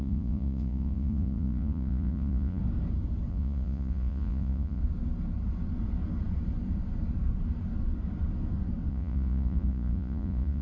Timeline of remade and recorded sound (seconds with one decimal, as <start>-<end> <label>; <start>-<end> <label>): 0.0-2.6 remade; 2.6-3.3 recorded; 3.3-4.8 remade; 4.8-8.9 recorded; 8.9-10.6 remade